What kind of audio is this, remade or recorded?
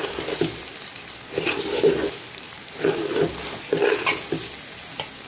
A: recorded